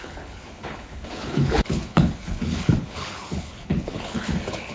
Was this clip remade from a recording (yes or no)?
yes